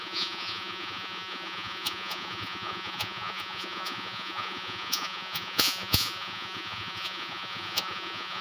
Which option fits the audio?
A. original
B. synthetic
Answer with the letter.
B